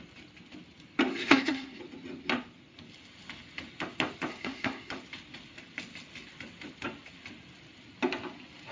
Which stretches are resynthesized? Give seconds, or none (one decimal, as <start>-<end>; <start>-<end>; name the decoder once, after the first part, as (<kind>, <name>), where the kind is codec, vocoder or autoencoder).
1.1-1.8 (codec, SNAC); 4.3-4.9